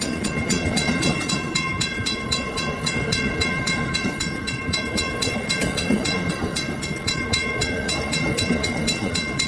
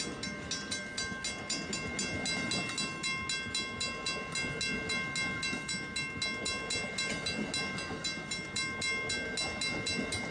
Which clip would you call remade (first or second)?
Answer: first